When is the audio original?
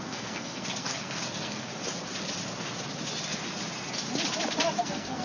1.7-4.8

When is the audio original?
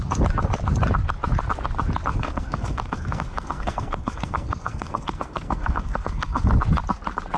0.0-2.1; 6.5-7.4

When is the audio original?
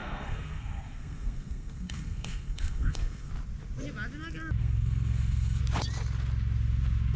3.3-4.6; 5.6-7.2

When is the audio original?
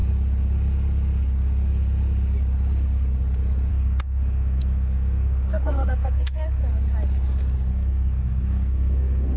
0.0-3.7; 6.6-7.7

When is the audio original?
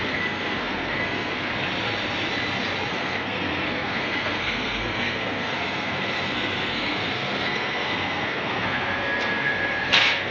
1.5-2.9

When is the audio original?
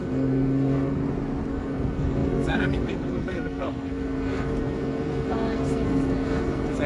1.0-1.5